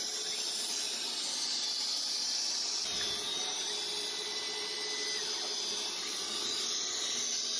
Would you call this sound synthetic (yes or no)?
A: no